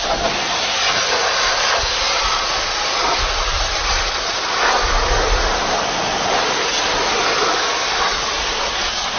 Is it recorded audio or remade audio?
recorded